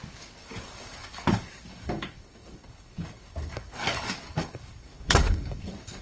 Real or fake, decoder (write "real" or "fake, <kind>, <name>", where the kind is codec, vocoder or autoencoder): fake, codec, DAC